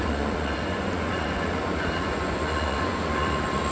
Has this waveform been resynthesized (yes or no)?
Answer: yes